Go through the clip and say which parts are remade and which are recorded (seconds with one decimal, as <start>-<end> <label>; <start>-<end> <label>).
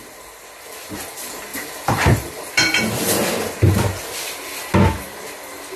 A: 0.0-5.8 recorded